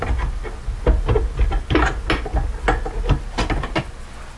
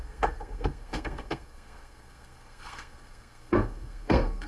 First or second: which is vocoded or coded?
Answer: second